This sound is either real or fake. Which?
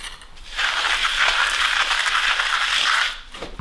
fake